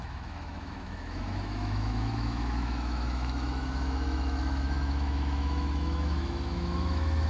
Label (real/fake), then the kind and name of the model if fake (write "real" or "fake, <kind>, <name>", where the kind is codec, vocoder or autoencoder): fake, autoencoder, DAC-VAE